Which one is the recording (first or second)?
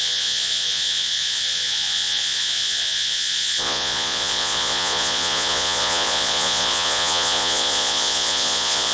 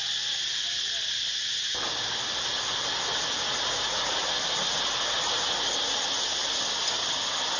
second